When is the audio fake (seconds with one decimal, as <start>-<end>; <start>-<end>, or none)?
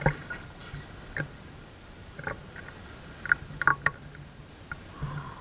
none